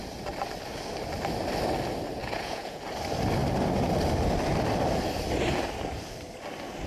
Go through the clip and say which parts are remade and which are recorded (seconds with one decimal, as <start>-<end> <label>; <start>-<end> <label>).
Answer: 0.0-2.2 recorded; 2.2-2.8 remade; 2.8-6.9 recorded